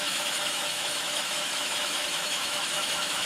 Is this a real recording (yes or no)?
no